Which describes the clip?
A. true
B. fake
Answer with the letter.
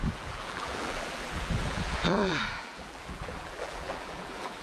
B